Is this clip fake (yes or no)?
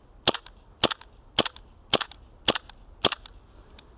no